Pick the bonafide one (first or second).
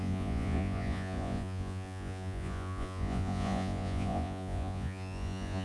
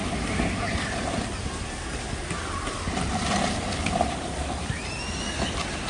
second